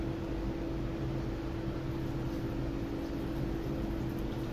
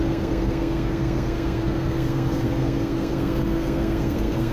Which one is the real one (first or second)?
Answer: first